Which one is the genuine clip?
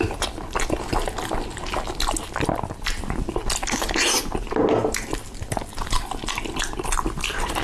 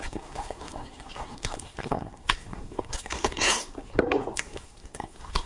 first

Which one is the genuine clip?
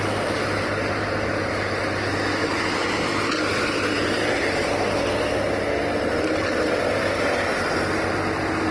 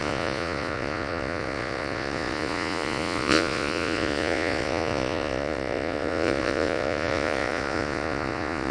first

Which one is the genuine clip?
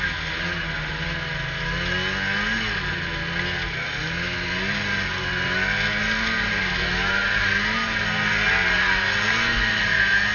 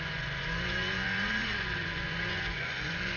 first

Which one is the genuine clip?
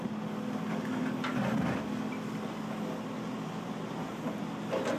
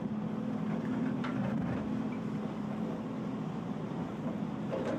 first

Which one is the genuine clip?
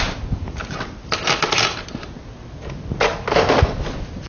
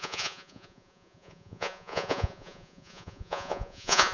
first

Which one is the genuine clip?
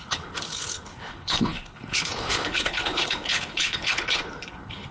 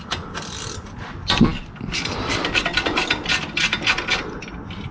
second